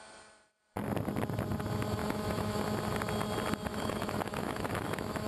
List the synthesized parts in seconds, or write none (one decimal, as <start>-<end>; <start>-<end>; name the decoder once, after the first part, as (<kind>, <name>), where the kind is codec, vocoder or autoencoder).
2.0-2.6 (autoencoder, DAC-VAE); 3.7-5.3